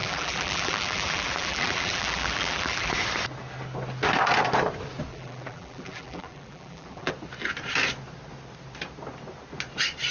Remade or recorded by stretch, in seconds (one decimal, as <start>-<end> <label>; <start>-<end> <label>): 0.0-2.9 remade; 2.9-5.1 recorded; 5.1-7.1 remade; 7.1-10.1 recorded